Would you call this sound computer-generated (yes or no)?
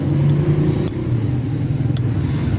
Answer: no